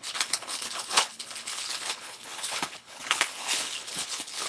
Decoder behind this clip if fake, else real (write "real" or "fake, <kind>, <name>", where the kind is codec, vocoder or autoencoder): fake, codec, HILCodec